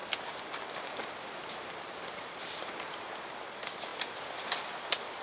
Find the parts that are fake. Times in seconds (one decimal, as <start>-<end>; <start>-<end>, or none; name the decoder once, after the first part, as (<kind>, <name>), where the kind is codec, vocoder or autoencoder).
1.4-3.9 (vocoder, BigVGAN v2); 4.4-5.2